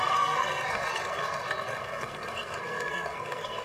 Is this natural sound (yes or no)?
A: no